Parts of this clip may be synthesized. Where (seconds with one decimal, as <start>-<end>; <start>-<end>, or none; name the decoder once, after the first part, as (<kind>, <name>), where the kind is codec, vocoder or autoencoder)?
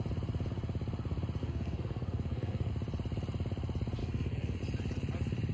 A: 1.4-2.7 (codec, SNAC); 4.0-4.6